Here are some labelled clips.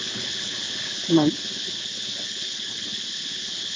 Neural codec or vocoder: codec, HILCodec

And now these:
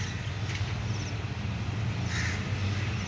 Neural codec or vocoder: none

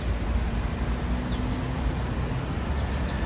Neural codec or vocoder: none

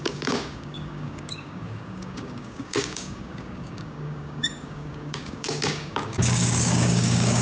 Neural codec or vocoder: codec, DAC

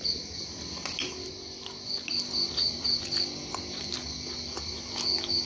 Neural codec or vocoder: none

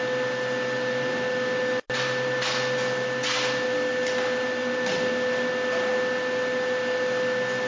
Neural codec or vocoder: none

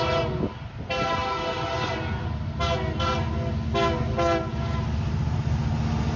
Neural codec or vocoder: none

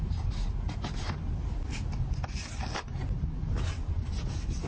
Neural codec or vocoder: none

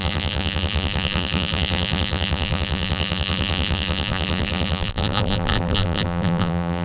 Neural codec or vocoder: vocoder, BigVGAN v2